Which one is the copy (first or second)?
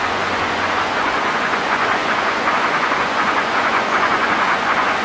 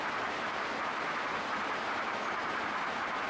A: first